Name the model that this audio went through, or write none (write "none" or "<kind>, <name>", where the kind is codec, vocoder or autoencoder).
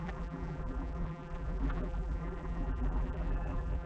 vocoder, BigVGAN v2